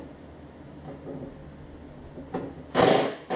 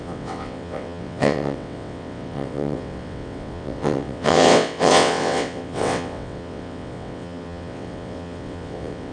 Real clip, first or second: first